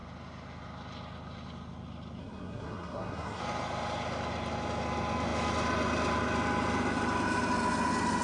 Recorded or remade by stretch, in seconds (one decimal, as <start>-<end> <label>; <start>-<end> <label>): 0.0-2.2 recorded; 2.2-3.4 remade; 3.4-8.2 recorded